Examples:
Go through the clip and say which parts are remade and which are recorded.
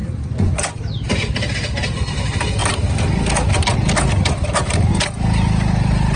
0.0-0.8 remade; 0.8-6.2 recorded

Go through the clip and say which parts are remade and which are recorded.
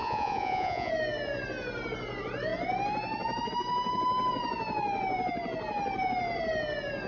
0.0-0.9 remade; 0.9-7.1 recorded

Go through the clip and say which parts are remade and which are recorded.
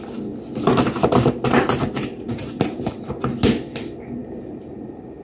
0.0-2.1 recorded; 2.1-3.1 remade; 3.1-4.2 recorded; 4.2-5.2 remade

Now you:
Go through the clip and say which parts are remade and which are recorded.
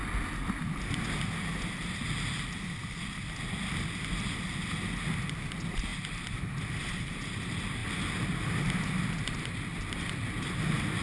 0.0-11.0 recorded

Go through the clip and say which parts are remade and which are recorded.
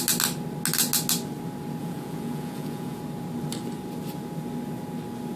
0.0-1.8 recorded; 1.8-3.0 remade; 3.0-5.4 recorded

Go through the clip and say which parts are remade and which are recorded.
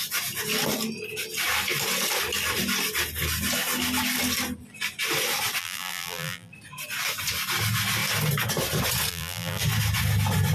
0.0-5.6 recorded; 5.6-6.5 remade; 6.5-9.1 recorded; 9.1-9.6 remade; 9.6-10.5 recorded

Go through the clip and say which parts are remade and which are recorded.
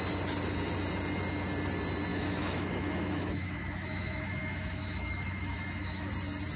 0.0-2.1 recorded; 2.1-6.1 remade; 6.1-6.6 recorded